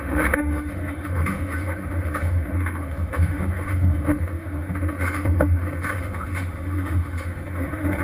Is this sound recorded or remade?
remade